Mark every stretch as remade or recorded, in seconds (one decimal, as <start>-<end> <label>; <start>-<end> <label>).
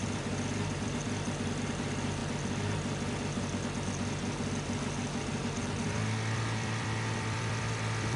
0.0-2.2 remade; 2.2-5.2 recorded; 5.2-8.2 remade